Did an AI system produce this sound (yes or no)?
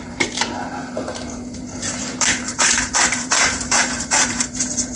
yes